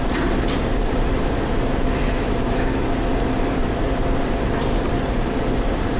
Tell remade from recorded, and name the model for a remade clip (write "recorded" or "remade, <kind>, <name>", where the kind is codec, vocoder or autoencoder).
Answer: remade, vocoder, BigVGAN v2